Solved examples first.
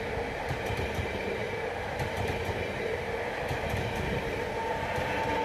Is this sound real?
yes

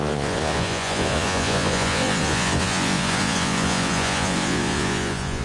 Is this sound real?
no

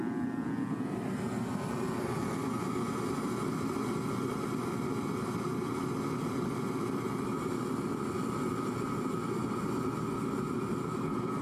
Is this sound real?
yes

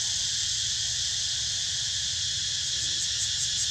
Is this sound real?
yes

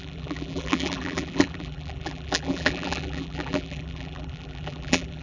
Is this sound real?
no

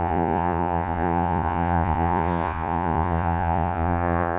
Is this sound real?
no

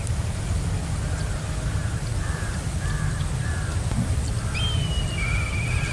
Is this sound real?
yes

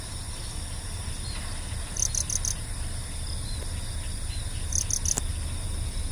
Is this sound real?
yes